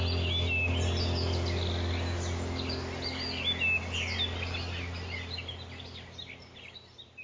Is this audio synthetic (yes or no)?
no